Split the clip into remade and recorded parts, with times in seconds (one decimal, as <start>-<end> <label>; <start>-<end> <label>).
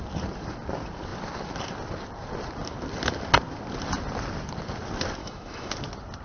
0.0-5.2 recorded; 5.2-5.7 remade; 5.7-6.2 recorded